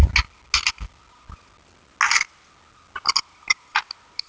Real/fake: real